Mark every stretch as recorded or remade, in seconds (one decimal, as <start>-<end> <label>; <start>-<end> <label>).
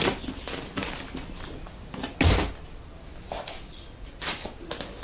0.0-5.0 recorded